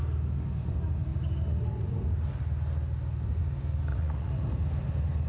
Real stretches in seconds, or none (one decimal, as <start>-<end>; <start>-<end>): 0.0-3.9; 4.4-5.3

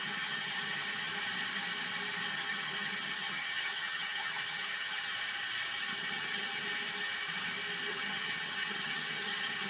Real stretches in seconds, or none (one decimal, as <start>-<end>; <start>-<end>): 1.1-2.3; 5.1-5.8; 6.6-7.9

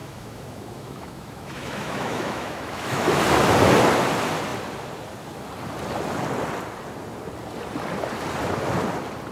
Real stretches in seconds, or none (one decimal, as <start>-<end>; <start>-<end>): 3.2-9.3

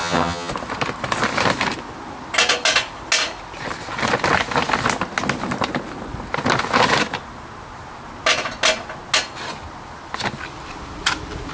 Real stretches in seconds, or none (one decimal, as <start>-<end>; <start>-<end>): 0.5-11.5

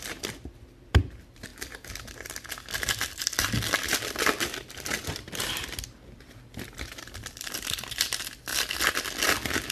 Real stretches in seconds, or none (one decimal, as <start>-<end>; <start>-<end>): 1.5-4.1; 8.5-9.7

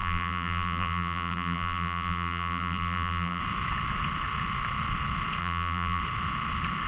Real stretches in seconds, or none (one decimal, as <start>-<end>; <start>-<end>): 3.4-5.4; 6.0-6.9